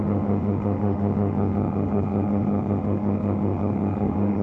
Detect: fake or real fake